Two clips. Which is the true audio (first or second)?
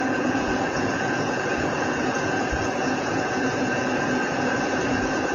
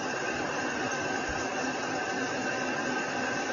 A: second